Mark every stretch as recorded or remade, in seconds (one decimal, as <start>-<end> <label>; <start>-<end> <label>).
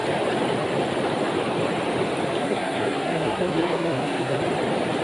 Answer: 0.0-2.4 recorded; 2.4-4.4 remade; 4.4-5.0 recorded